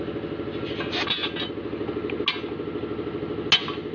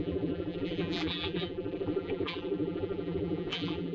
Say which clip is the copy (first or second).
second